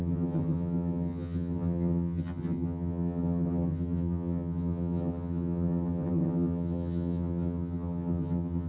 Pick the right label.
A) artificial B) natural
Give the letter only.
A